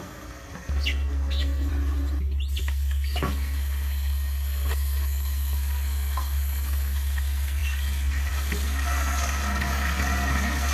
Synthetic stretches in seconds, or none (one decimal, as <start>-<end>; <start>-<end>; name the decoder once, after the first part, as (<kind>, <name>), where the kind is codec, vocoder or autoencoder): 0.0-1.7 (codec, SNAC); 2.6-10.7